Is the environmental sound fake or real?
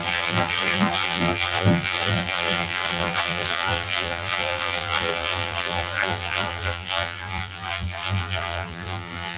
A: fake